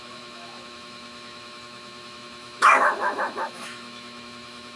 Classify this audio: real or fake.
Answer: fake